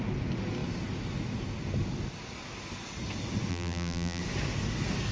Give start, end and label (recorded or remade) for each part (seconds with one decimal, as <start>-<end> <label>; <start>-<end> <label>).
0.0-3.5 recorded; 3.5-4.2 remade; 4.2-5.1 recorded